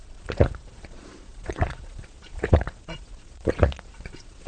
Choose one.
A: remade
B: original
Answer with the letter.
A